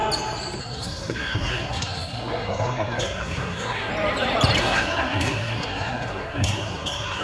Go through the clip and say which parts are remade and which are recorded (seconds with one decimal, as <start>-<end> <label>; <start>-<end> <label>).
0.0-0.6 recorded; 0.6-3.9 remade; 3.9-4.6 recorded; 4.6-7.2 remade